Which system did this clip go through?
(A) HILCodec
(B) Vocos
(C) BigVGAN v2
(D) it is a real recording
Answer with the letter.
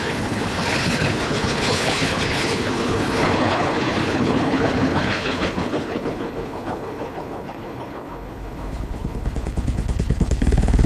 A